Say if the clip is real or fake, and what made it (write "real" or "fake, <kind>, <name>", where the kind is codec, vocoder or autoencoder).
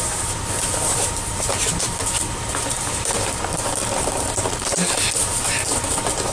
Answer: fake, vocoder, BigVGAN v2